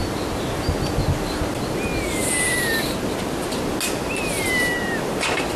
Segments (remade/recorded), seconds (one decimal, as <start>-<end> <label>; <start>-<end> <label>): 0.0-5.6 recorded